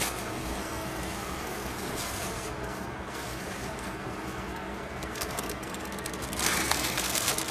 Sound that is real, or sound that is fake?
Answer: fake